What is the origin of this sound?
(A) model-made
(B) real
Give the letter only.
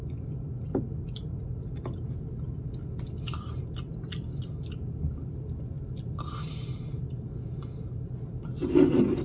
B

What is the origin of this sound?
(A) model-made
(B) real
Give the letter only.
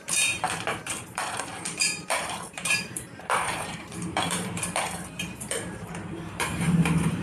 A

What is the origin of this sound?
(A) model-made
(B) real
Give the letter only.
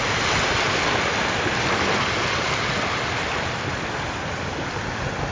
B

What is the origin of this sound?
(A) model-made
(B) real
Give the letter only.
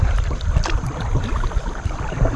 B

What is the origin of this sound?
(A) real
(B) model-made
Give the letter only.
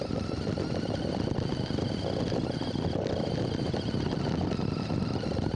A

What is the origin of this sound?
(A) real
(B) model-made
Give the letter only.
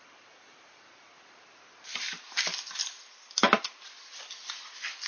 A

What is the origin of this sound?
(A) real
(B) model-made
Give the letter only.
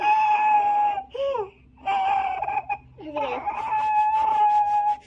A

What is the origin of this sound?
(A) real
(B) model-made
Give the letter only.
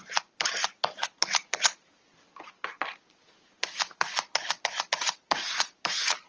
A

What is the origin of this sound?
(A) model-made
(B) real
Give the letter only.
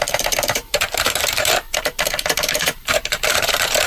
A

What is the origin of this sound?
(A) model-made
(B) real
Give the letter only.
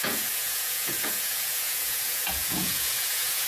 A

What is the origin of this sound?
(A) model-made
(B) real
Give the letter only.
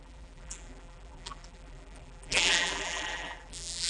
A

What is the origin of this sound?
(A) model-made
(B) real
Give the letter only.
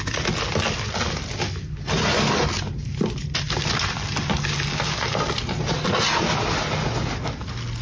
B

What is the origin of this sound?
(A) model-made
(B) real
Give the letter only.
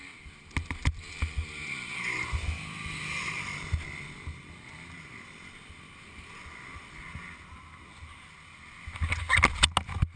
B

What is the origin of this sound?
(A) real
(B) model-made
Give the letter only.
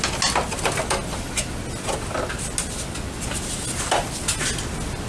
A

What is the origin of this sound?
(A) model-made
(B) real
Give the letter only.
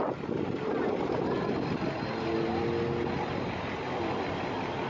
B